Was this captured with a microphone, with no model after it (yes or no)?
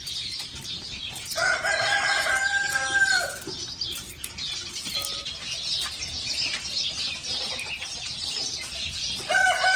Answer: no